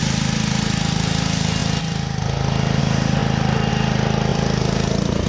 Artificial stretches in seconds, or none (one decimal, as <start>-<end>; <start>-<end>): 4.3-5.3